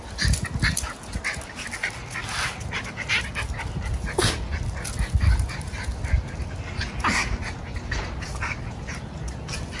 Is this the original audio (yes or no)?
yes